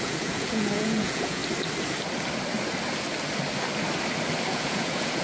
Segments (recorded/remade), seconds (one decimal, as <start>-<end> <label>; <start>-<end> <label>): 0.0-1.4 remade; 1.4-4.5 recorded; 4.5-5.2 remade